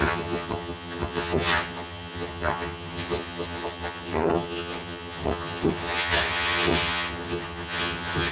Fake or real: fake